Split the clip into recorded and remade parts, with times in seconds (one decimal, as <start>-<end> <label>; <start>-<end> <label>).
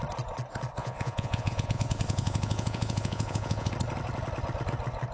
0.0-0.8 recorded; 0.8-3.7 remade; 3.7-5.1 recorded